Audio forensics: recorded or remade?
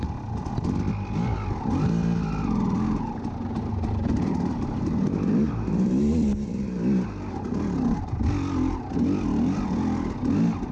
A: recorded